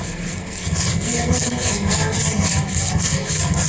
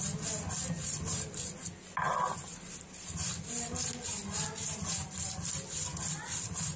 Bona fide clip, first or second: second